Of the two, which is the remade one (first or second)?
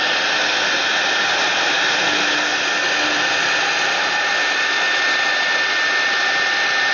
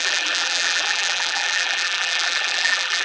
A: second